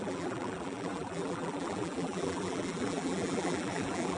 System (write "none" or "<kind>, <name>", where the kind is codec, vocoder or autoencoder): vocoder, BigVGAN v2